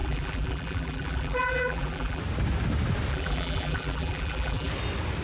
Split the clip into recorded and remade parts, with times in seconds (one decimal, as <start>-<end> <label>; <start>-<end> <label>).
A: 0.0-2.2 remade; 2.2-3.1 recorded; 3.1-4.7 remade; 4.7-5.2 recorded